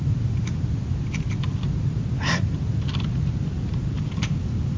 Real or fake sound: real